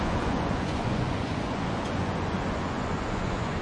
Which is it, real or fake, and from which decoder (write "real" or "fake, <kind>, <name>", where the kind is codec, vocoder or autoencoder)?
fake, vocoder, Vocos